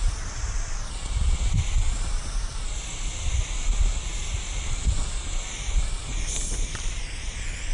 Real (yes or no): no